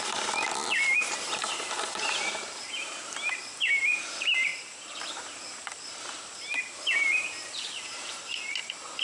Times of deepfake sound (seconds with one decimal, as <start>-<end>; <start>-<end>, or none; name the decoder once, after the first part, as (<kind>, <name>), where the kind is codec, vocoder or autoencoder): 0.0-9.0 (vocoder, BigVGAN v2)